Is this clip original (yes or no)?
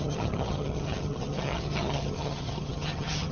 no